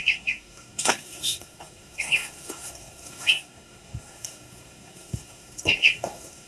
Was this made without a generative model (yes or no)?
no